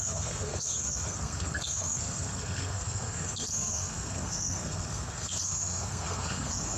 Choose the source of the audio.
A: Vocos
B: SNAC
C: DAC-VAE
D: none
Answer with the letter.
B